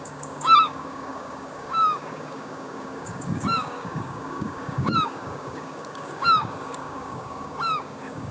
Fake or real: fake